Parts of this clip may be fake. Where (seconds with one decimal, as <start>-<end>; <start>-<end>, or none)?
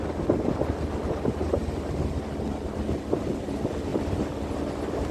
none